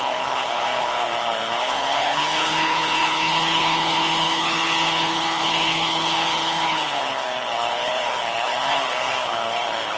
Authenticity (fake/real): fake